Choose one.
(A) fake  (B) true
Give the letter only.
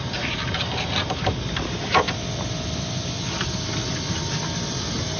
B